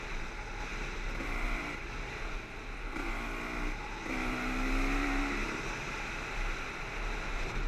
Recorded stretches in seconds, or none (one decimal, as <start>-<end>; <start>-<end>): 0.0-7.7